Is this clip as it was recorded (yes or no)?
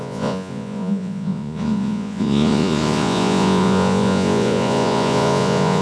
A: no